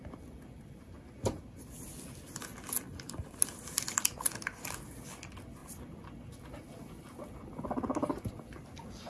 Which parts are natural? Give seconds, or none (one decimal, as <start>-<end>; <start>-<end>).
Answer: 0.0-9.1